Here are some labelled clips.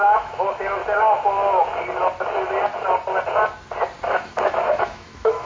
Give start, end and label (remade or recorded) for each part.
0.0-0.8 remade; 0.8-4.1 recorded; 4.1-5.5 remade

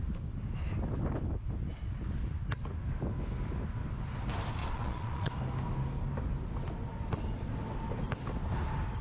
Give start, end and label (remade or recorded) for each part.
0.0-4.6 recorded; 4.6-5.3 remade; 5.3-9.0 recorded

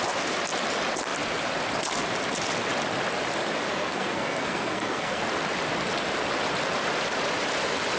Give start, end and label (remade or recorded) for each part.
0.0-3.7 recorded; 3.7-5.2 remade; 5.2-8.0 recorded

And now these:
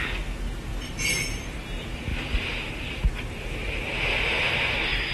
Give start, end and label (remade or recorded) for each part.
0.0-0.7 recorded; 0.7-1.6 remade; 1.6-2.1 recorded; 2.1-5.1 remade